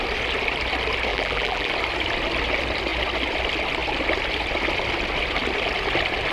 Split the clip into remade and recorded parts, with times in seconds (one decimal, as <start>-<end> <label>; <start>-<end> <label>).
0.0-1.1 recorded; 1.1-1.7 remade; 1.7-6.3 recorded